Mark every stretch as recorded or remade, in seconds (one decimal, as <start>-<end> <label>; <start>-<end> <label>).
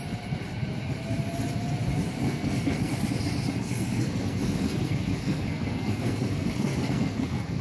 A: 0.0-2.2 recorded; 2.2-2.9 remade; 2.9-3.5 recorded; 3.5-7.6 remade